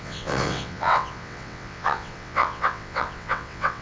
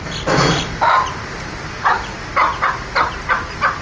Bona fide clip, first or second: second